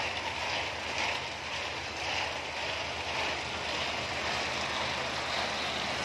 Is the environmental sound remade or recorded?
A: recorded